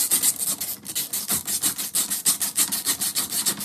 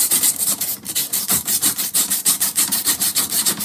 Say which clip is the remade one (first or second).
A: second